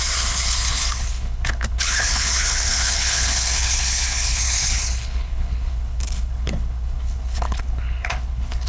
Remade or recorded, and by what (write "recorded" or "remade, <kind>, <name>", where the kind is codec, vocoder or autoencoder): remade, codec, HILCodec